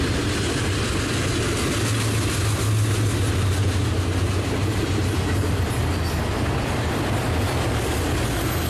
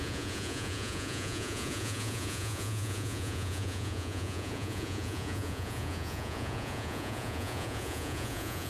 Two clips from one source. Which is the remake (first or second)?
second